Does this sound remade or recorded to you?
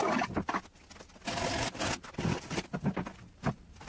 recorded